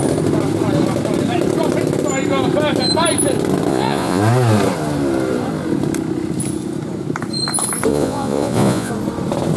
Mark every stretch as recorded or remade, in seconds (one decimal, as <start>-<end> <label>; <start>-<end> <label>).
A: 0.0-3.7 recorded; 3.7-4.2 remade; 4.2-7.9 recorded; 7.9-8.9 remade; 8.9-9.6 recorded